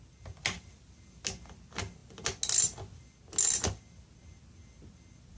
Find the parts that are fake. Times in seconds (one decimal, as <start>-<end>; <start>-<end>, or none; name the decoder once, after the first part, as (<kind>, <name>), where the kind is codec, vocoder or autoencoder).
none

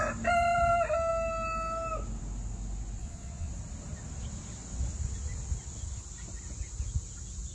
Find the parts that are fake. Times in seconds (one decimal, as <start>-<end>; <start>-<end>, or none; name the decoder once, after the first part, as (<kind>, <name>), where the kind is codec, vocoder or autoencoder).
3.0-3.5 (vocoder, Vocos)